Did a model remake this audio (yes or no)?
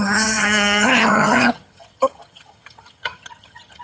yes